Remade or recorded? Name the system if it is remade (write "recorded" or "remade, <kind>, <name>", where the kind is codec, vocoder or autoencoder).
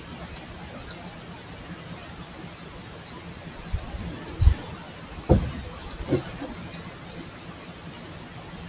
recorded